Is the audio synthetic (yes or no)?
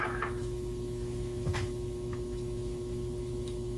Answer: yes